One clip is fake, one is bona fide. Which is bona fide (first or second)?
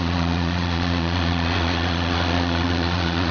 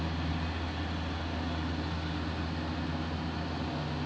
second